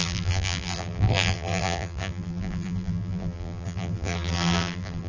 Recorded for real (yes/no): no